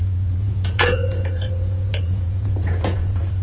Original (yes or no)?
no